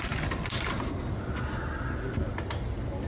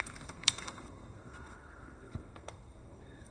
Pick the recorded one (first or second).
first